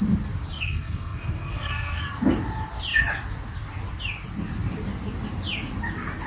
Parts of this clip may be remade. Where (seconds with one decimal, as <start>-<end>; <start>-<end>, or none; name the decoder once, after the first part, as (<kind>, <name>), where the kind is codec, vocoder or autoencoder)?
0.5-2.0 (codec, SNAC)

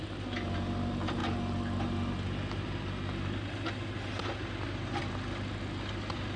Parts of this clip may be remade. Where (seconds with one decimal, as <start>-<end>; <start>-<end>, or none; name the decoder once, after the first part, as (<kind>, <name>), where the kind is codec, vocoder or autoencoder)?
none

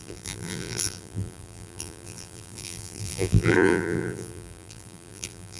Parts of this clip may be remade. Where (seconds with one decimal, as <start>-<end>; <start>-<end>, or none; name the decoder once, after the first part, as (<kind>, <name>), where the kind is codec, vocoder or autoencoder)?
0.0-5.6 (vocoder, BigVGAN v2)

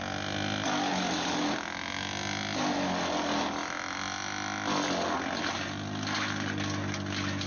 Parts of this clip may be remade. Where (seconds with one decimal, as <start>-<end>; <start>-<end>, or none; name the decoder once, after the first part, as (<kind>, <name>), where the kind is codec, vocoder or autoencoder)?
none